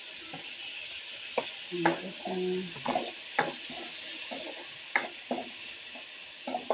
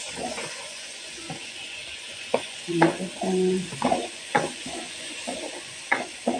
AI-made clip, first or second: second